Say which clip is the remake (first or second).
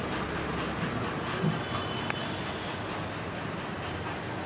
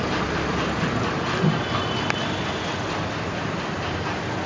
second